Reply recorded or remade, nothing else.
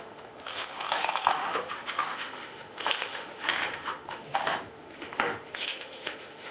remade